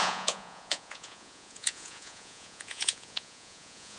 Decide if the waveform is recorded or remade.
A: remade